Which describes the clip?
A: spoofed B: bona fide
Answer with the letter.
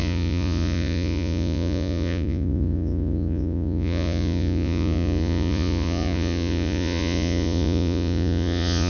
A